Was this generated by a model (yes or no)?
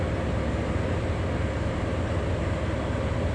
no